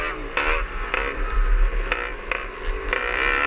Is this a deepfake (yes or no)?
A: no